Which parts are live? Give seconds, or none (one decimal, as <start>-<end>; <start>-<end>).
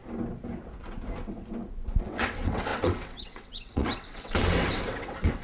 0.0-2.0